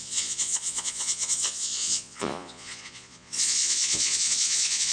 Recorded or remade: remade